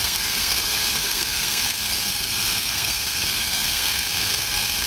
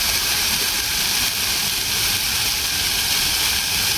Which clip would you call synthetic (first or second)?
first